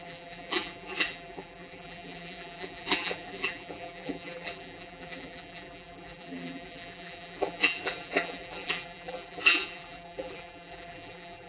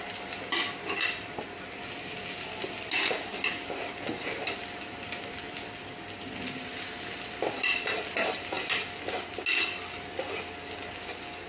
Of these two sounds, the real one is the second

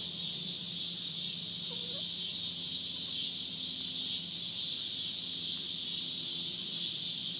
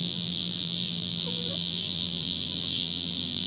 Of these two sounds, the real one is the first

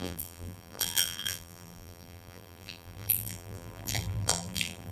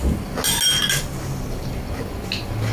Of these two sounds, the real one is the second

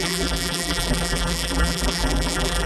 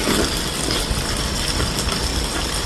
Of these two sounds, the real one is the second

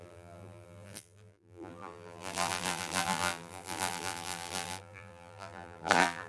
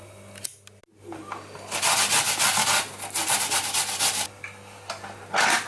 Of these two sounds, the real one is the second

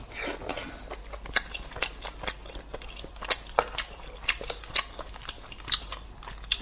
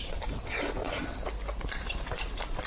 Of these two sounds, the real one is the first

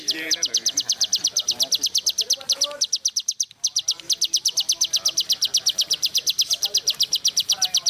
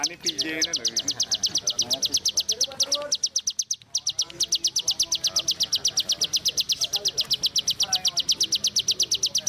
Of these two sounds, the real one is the second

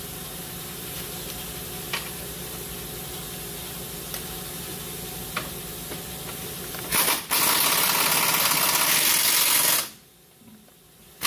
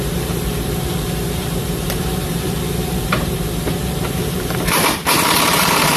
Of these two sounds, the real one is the first